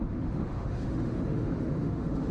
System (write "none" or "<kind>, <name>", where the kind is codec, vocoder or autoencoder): autoencoder, DAC-VAE